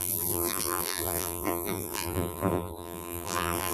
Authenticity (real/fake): fake